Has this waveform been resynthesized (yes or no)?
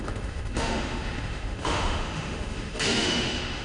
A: yes